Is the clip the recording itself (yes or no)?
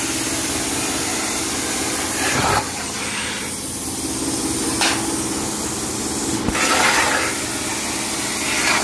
yes